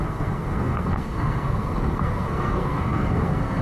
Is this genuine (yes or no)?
no